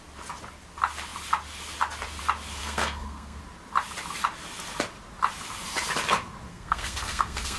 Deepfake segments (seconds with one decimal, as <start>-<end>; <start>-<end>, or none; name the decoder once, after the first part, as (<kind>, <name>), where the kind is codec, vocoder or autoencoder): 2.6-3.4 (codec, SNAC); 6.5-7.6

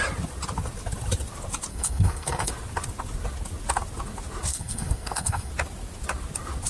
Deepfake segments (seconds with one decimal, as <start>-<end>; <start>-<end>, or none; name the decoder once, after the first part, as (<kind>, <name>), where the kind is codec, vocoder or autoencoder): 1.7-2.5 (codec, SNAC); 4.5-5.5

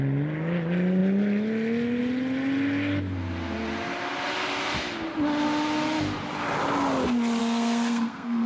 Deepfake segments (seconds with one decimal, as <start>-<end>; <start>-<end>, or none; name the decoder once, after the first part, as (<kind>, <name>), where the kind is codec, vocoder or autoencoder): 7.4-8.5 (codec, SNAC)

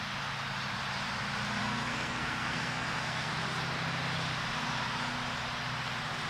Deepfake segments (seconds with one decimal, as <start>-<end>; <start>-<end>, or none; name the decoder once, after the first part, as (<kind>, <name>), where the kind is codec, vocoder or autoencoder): 1.6-3.3 (codec, SNAC)

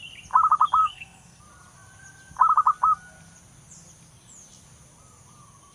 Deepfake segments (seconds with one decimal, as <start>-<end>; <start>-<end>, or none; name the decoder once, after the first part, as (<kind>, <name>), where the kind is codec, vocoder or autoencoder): 0.8-1.4 (codec, SNAC)

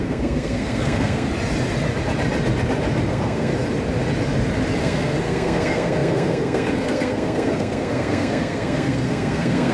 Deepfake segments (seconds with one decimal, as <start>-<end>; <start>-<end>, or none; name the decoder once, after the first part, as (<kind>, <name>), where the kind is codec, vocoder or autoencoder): 0.0-1.3 (codec, SNAC); 3.1-3.5; 4.8-9.7